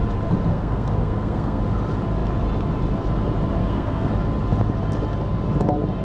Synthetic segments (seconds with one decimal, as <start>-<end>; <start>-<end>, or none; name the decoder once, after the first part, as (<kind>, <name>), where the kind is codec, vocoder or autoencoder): 0.5-1.6 (codec, SNAC); 3.6-4.1